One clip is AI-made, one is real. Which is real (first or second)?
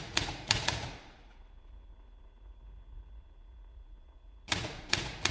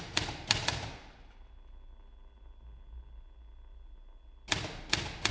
second